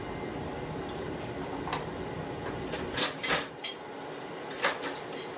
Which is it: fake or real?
real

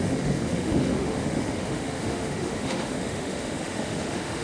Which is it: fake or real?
fake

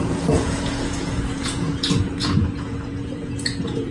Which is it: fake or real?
fake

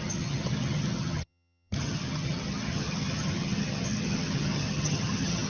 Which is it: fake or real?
fake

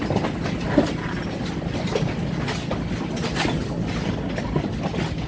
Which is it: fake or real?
real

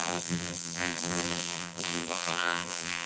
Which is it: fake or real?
fake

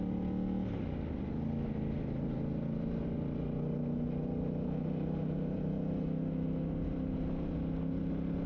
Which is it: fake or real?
real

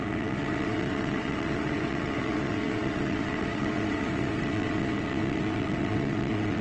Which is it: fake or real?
fake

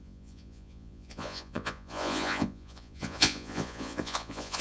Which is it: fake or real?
fake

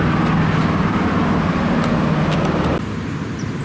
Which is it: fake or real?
real